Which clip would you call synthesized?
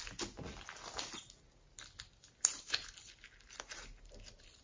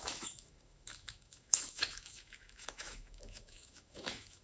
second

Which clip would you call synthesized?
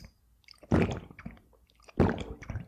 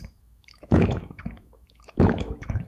second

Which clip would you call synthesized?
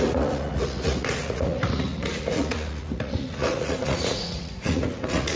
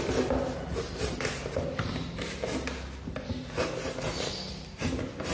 first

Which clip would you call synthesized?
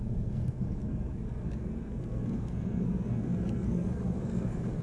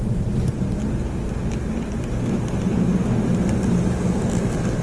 first